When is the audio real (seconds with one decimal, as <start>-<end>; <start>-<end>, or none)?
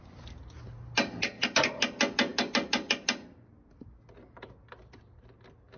0.0-5.8